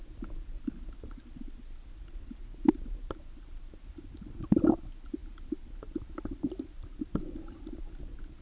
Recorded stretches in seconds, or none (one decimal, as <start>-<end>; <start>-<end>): 0.0-8.4